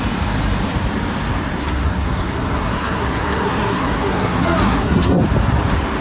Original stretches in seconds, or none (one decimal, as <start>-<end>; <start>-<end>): 0.0-1.6; 5.2-6.0